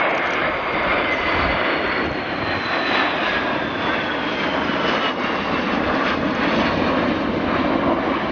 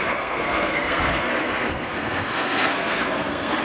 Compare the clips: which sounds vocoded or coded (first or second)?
second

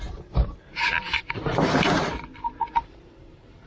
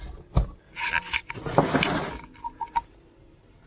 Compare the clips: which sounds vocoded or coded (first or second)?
first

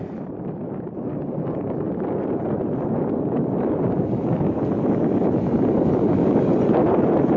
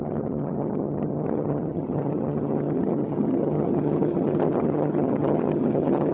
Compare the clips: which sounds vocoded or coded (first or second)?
second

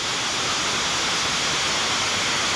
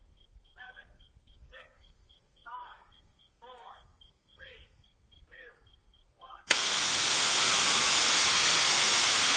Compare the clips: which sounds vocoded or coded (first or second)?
second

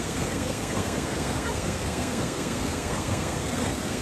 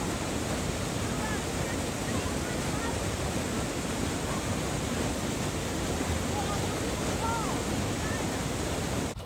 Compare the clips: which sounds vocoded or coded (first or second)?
first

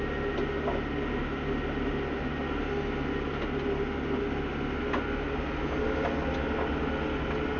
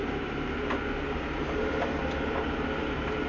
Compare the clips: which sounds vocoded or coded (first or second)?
second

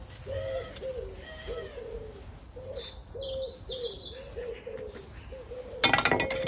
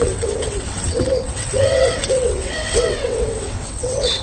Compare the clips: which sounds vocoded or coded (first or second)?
second